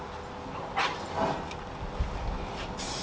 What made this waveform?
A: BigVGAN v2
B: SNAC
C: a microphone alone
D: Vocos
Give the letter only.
C